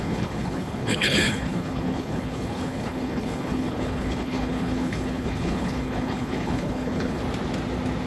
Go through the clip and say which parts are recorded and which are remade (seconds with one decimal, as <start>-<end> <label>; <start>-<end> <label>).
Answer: 0.0-7.2 remade; 7.2-8.1 recorded

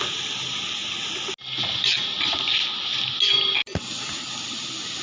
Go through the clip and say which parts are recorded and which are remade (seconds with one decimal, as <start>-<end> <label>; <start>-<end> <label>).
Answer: 0.0-5.0 recorded